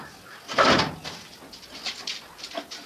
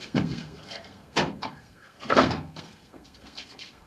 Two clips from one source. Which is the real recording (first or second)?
first